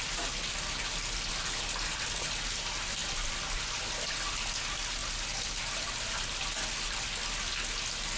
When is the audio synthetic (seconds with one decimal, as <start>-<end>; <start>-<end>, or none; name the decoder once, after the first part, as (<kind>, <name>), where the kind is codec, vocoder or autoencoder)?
none